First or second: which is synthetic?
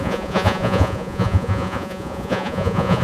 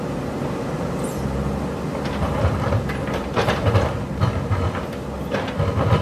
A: first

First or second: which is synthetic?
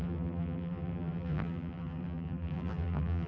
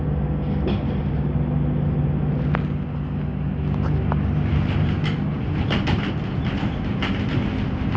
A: first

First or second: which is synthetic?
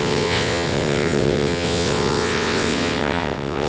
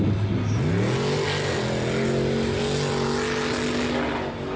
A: first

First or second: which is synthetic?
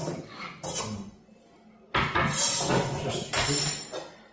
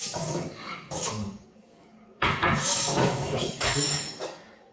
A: second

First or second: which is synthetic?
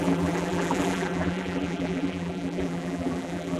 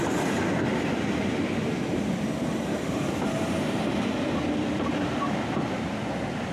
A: first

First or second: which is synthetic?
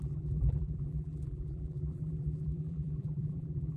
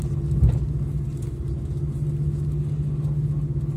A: first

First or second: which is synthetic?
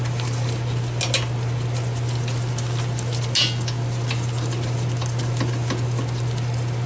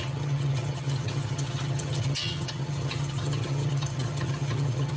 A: second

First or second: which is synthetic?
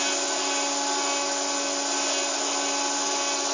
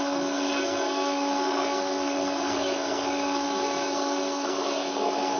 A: second